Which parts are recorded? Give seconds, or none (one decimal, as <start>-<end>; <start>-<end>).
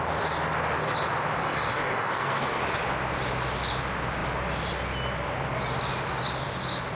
0.0-1.4; 2.6-6.9